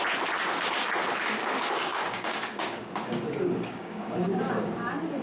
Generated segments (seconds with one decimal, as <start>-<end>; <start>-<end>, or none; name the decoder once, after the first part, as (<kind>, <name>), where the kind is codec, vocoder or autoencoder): 1.4-4.5 (codec, DAC)